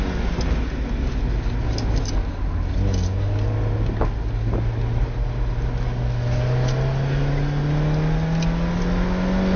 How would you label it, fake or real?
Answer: real